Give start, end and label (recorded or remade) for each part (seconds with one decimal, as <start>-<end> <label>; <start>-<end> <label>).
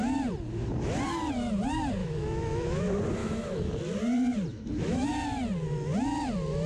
0.0-2.0 recorded; 2.0-2.8 remade; 2.8-3.2 recorded; 3.2-3.7 remade; 3.7-4.5 recorded; 4.5-5.1 remade; 5.1-6.7 recorded